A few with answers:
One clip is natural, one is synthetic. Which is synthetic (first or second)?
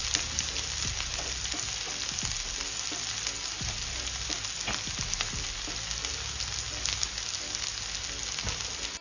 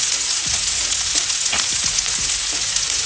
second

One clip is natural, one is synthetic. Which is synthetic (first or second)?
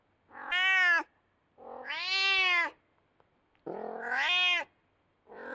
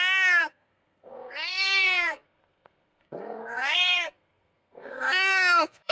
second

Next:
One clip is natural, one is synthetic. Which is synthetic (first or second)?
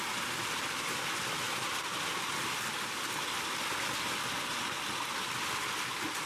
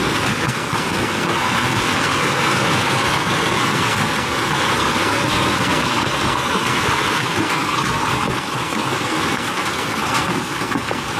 second